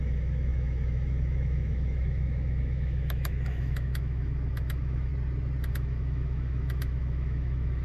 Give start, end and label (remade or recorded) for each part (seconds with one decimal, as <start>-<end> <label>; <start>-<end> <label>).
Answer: 0.0-5.1 remade; 5.1-5.7 recorded; 5.7-7.8 remade